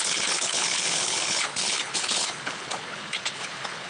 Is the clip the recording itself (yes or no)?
no